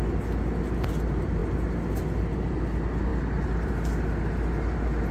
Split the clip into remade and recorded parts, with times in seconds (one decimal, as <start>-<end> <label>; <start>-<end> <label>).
0.0-5.1 recorded